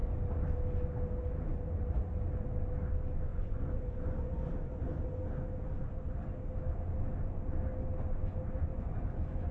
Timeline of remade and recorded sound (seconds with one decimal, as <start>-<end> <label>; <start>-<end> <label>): 0.0-3.3 recorded; 3.3-4.5 remade; 4.5-8.7 recorded; 8.7-9.5 remade